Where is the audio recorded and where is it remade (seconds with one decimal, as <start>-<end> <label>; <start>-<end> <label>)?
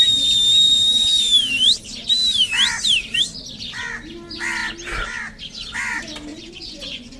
0.0-6.3 recorded; 6.3-7.2 remade